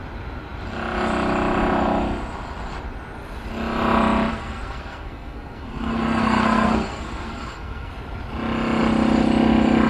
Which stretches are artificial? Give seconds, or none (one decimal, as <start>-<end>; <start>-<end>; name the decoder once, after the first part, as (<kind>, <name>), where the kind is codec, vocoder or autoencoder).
4.3-7.9 (codec, SNAC)